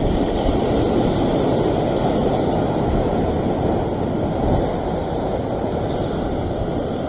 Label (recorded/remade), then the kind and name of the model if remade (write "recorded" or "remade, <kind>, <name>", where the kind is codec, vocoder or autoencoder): recorded